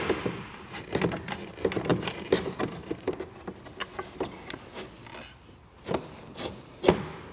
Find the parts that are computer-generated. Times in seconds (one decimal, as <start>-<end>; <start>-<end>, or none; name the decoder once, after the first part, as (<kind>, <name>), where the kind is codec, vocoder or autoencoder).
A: 1.9-2.6 (vocoder, BigVGAN v2)